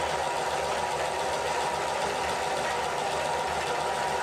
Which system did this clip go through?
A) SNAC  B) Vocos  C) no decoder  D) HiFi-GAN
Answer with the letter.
C